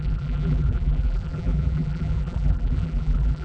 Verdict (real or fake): fake